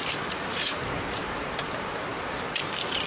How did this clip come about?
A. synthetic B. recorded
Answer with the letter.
A